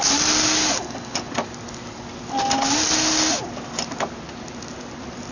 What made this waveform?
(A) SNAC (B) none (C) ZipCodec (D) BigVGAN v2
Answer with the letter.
B